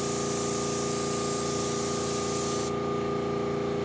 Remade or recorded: recorded